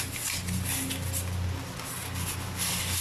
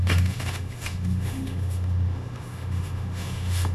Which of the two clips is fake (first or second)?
second